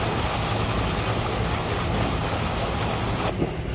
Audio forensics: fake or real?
real